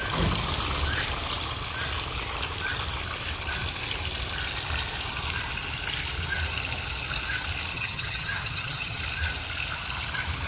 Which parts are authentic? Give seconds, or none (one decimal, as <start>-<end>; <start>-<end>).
0.0-7.7; 9.0-10.5